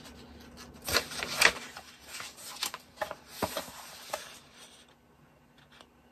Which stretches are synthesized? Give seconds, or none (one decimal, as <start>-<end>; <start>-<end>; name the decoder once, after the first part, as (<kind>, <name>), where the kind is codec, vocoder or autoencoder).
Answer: 0.9-4.6 (vocoder, BigVGAN v2)